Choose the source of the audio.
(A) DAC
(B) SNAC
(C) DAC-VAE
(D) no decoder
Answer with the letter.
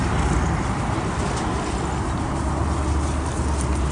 D